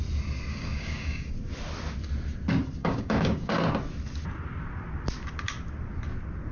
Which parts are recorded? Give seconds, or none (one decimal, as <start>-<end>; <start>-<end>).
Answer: 0.0-0.5; 1.3-2.8; 3.6-6.5